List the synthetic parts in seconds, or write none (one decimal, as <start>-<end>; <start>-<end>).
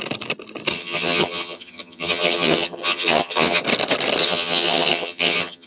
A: 0.7-3.6; 4.2-5.7